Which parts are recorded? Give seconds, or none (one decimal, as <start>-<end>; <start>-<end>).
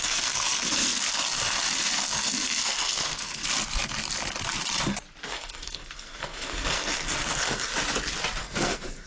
1.2-2.1; 3.4-5.3; 7.7-8.4